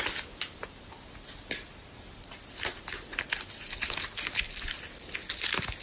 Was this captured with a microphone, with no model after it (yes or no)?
yes